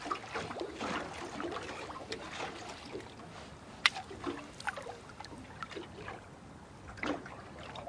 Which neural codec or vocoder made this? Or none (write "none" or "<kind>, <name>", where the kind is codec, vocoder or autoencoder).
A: none